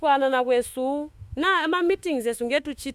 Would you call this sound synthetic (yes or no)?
yes